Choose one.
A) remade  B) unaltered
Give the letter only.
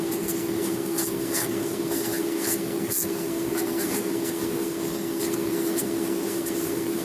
A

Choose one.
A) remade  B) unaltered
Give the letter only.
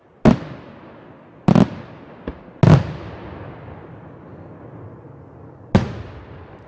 B